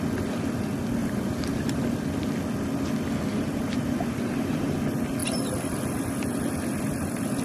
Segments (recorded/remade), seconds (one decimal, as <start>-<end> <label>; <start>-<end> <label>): 0.0-1.0 recorded; 1.0-1.8 remade; 1.8-3.3 recorded; 3.3-4.8 remade; 4.8-7.4 recorded